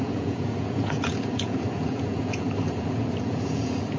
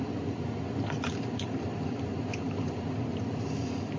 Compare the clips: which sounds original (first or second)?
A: second